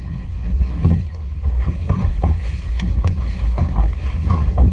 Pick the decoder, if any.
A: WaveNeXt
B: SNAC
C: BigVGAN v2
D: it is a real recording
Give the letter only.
B